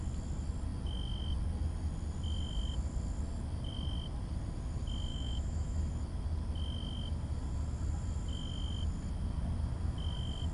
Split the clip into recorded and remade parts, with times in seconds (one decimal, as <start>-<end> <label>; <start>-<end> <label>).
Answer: 0.0-5.1 recorded; 5.1-5.9 remade; 5.9-10.5 recorded